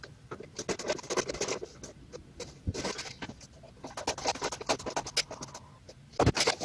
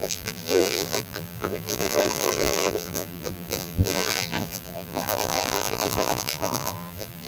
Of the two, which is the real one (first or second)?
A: first